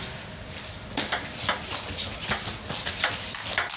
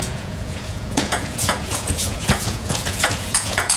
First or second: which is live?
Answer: first